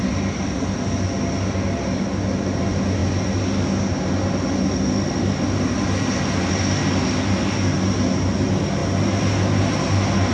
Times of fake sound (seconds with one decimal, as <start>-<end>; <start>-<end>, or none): none